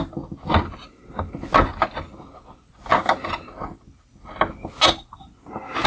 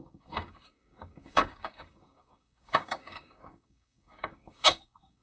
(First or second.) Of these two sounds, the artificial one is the second